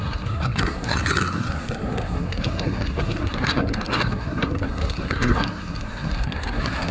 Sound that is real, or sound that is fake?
fake